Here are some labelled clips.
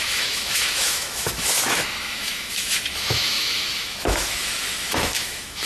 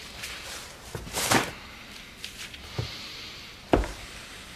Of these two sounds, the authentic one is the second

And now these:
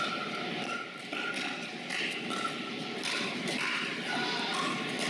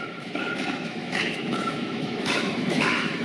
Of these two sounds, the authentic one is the first